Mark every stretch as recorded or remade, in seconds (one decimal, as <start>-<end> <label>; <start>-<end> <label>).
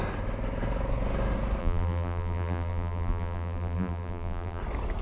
0.0-1.6 recorded; 1.6-4.6 remade; 4.6-5.0 recorded